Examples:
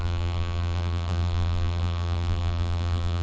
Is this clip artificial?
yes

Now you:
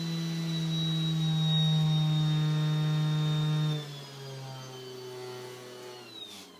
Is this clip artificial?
no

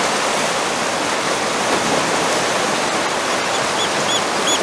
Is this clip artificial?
no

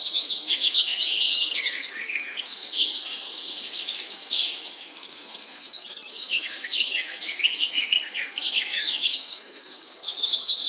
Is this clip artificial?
yes